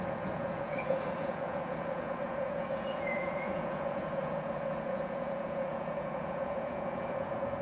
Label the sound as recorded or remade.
remade